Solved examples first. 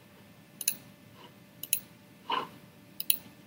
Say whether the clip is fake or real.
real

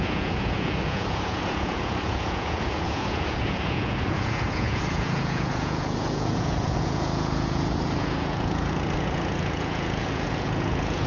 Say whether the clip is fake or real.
fake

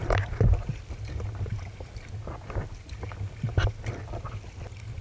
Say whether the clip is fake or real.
real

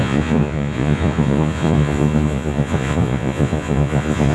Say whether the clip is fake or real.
fake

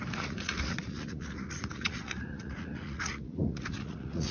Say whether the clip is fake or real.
fake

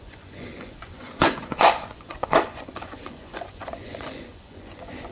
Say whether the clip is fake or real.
fake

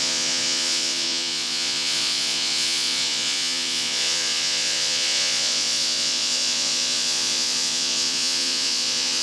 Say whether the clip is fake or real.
fake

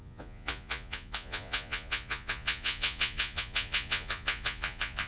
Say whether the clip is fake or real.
fake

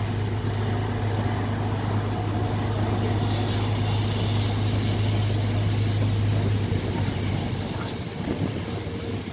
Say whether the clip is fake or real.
real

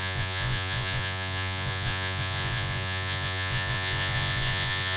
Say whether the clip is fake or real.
fake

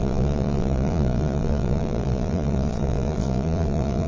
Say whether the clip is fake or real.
fake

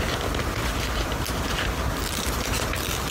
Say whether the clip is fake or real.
real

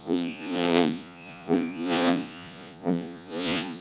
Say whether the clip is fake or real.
fake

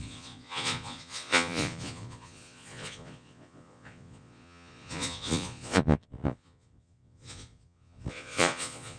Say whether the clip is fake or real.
fake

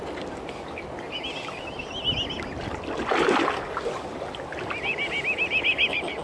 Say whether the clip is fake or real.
real